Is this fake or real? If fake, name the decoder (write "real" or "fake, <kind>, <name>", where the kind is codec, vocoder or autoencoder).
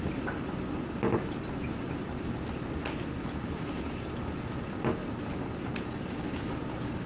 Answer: real